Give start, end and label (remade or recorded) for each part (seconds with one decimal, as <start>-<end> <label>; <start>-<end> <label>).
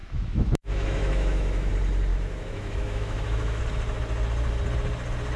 0.0-1.7 remade; 1.7-2.1 recorded; 2.1-3.6 remade; 3.6-5.4 recorded